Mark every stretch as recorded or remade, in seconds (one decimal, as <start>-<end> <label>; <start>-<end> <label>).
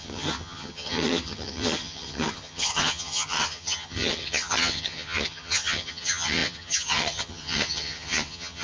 0.0-8.6 remade